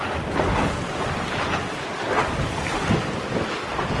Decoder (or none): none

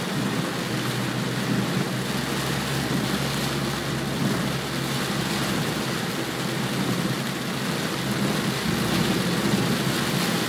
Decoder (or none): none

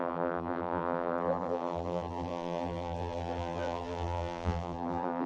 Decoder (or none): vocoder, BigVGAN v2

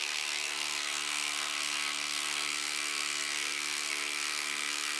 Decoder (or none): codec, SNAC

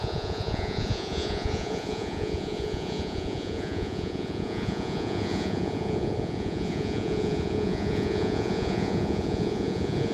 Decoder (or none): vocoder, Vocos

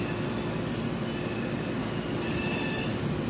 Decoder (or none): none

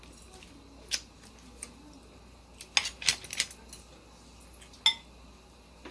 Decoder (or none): none